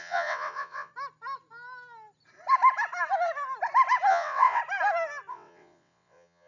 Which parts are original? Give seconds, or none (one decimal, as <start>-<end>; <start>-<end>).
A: 0.9-4.1; 4.6-5.3